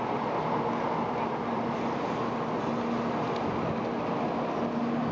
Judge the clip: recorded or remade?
recorded